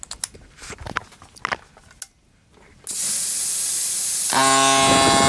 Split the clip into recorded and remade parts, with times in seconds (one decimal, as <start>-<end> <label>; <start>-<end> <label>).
0.0-5.3 recorded